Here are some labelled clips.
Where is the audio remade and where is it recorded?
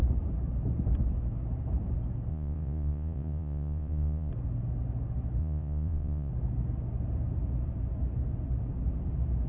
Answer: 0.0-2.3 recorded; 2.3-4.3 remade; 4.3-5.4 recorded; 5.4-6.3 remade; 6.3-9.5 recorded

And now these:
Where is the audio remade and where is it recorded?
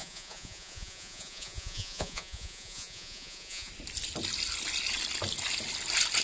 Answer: 0.0-3.7 remade; 3.7-6.2 recorded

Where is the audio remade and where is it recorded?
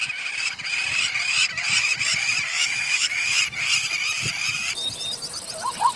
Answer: 0.0-2.5 recorded; 2.5-3.4 remade; 3.4-6.0 recorded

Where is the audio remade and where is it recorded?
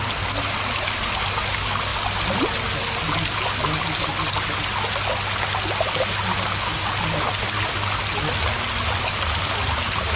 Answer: 0.0-10.2 recorded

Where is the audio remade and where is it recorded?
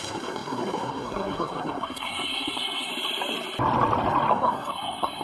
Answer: 0.0-2.9 remade; 2.9-4.3 recorded; 4.3-5.2 remade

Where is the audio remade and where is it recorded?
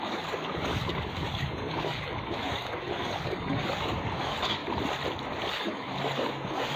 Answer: 0.0-4.6 remade; 4.6-5.5 recorded; 5.5-6.8 remade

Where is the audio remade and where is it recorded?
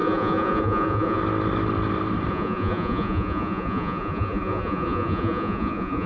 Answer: 0.0-1.2 remade; 1.2-2.3 recorded; 2.3-6.1 remade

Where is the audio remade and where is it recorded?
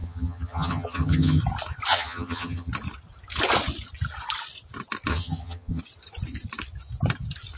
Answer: 0.0-1.4 remade; 1.4-1.9 recorded; 1.9-2.7 remade; 2.7-5.1 recorded; 5.1-5.8 remade; 5.8-7.6 recorded